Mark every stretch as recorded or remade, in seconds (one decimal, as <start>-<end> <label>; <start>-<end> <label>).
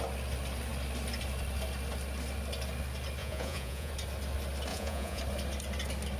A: 0.0-3.2 recorded; 3.2-3.9 remade; 3.9-4.7 recorded; 4.7-5.2 remade; 5.2-6.2 recorded